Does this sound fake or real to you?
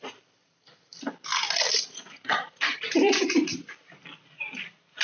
fake